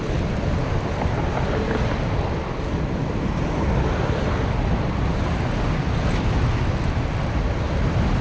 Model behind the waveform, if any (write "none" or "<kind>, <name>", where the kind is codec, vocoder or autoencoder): none